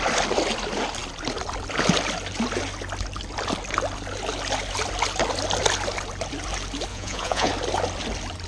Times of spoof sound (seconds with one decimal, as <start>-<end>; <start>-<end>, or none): 6.9-7.5